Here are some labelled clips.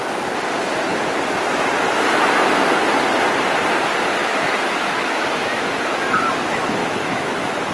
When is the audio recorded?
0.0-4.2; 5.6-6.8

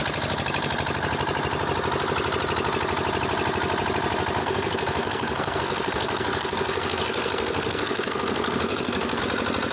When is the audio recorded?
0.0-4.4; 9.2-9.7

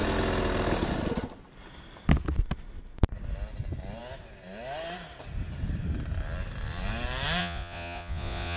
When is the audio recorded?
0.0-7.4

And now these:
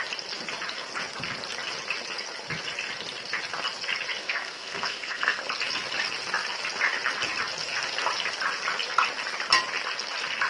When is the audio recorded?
0.0-4.2; 5.4-10.5